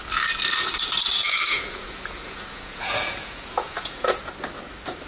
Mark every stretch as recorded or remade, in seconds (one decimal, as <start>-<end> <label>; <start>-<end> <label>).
0.0-1.1 recorded; 1.1-4.2 remade; 4.2-5.1 recorded